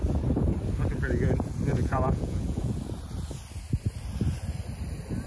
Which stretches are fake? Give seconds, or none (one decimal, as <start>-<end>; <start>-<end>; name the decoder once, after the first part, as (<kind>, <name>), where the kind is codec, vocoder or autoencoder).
1.7-2.7 (vocoder, Vocos)